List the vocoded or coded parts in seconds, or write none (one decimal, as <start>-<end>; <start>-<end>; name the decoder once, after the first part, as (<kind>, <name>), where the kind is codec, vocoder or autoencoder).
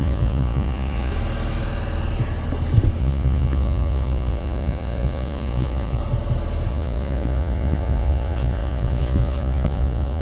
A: 0.0-1.1 (vocoder, Vocos); 3.0-6.0; 6.7-10.2